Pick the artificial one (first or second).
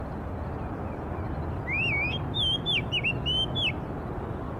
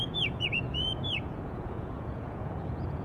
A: second